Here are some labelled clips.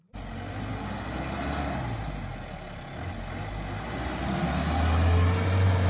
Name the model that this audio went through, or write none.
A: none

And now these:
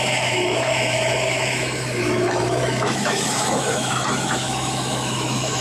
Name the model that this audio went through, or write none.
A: autoencoder, DAC-VAE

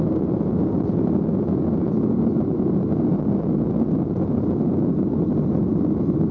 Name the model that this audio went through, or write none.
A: none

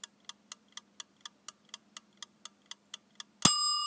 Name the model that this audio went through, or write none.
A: none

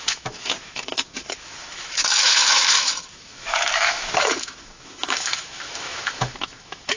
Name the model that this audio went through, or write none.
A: autoencoder, DAC-VAE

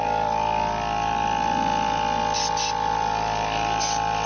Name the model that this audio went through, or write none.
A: none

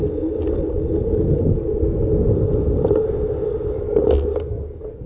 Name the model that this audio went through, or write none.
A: none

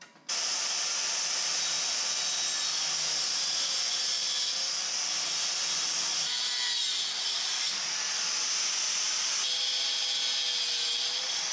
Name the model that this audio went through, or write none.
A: none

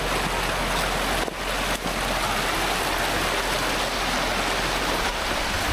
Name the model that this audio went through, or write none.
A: none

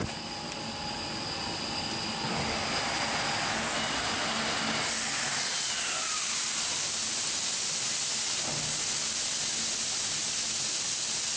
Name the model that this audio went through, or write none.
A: none